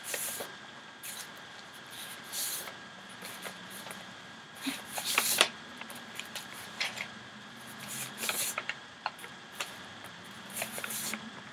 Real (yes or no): no